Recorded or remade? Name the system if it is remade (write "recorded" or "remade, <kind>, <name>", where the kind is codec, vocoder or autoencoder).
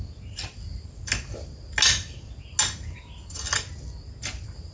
recorded